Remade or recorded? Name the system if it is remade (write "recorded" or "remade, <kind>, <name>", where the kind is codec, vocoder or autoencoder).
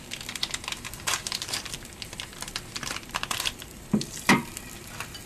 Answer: remade, vocoder, BigVGAN v2